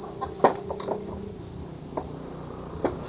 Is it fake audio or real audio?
real